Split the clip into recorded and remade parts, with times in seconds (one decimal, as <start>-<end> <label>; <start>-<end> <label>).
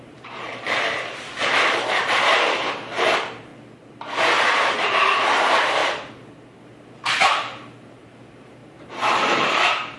0.0-3.5 remade; 3.5-4.7 recorded; 4.7-5.8 remade; 5.8-7.2 recorded; 7.2-10.0 remade